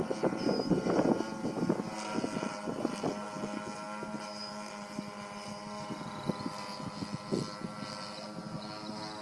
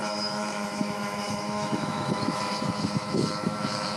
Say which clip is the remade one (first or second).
second